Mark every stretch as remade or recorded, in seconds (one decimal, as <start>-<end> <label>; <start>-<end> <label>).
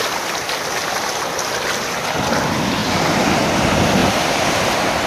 0.0-4.0 recorded; 4.0-5.1 remade